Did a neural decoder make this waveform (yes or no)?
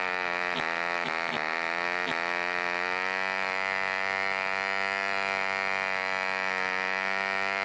no